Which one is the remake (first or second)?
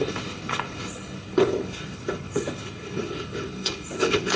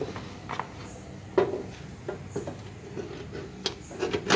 first